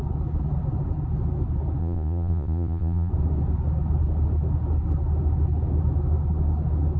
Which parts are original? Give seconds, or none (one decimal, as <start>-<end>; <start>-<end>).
0.0-1.8; 3.1-7.0